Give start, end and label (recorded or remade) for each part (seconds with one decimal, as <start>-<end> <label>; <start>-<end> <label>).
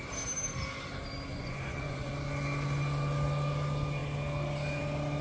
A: 0.0-1.3 recorded; 1.3-2.1 remade; 2.1-5.2 recorded